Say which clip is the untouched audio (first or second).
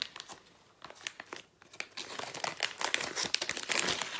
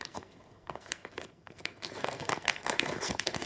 first